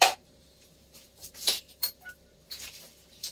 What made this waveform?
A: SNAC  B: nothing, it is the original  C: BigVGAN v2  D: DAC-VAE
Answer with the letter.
C